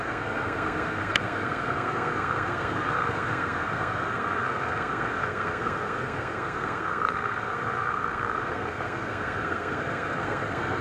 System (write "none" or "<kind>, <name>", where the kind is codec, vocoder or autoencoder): codec, SNAC